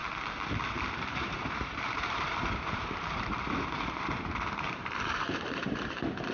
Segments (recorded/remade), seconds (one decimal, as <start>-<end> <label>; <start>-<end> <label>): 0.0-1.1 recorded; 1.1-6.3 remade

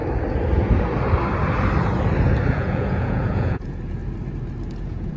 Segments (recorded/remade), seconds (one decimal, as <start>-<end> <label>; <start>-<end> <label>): 0.0-2.5 recorded; 2.5-4.0 remade; 4.0-4.8 recorded; 4.8-5.2 remade

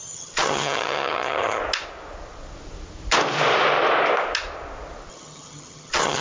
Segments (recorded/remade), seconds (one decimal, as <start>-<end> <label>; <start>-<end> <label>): 0.0-1.6 remade; 1.6-5.1 recorded; 5.1-6.2 remade